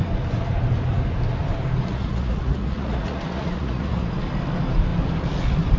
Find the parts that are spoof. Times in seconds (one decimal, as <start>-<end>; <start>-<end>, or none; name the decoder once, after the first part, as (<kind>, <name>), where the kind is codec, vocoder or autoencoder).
1.9-4.1 (vocoder, Vocos)